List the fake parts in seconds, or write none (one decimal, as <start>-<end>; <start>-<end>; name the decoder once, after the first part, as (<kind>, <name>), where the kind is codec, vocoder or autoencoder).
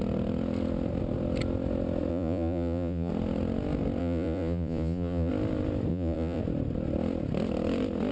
2.1-3.1 (vocoder, Vocos); 4.0-5.3; 5.9-6.4